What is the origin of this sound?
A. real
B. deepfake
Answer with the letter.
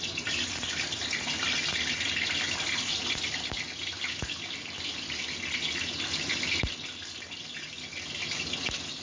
A